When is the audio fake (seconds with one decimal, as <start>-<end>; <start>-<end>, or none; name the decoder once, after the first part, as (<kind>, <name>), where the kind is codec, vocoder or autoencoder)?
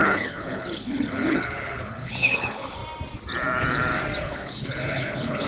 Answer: 0.0-2.8 (codec, HILCodec); 4.2-5.5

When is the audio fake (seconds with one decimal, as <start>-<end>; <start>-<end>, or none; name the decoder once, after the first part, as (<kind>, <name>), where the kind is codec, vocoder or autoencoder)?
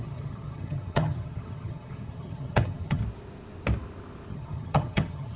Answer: 0.0-3.0 (vocoder, HiFi-GAN); 4.3-5.4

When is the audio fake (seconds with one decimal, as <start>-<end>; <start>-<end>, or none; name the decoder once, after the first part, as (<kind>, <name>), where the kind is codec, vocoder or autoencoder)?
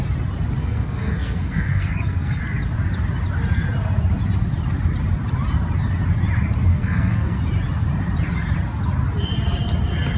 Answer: 0.6-2.4 (codec, SNAC); 6.7-7.4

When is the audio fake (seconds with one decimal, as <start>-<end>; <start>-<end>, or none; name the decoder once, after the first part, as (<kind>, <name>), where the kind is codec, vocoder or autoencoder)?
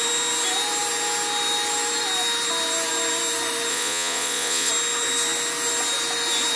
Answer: 3.7-4.7 (vocoder, Vocos)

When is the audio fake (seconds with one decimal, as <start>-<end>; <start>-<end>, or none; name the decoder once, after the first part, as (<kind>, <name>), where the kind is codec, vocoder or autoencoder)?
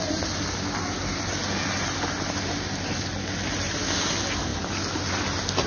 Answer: none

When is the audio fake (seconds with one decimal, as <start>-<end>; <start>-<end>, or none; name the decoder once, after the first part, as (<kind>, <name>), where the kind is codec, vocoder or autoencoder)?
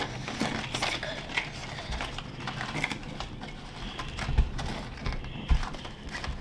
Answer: none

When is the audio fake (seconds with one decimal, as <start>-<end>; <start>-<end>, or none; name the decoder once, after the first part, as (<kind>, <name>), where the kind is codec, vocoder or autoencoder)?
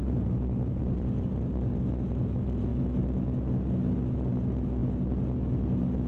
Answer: 0.8-1.8 (vocoder, BigVGAN v2)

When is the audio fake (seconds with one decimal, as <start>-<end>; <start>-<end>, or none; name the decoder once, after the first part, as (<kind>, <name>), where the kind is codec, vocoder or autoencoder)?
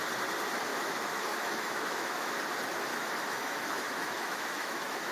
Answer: 0.7-2.4 (autoencoder, DAC-VAE); 2.9-5.1